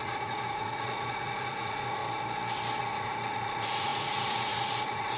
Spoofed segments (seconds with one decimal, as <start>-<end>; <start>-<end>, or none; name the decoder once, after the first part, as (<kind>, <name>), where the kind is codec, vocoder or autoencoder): 0.0-2.0 (vocoder, Vocos); 2.8-5.2